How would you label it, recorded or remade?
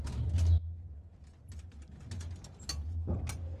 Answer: recorded